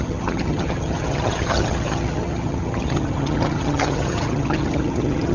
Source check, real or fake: fake